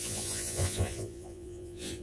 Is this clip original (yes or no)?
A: no